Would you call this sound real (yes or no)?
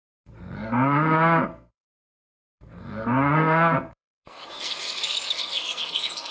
no